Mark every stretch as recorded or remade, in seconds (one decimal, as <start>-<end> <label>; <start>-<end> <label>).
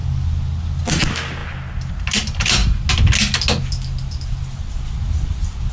0.0-5.7 recorded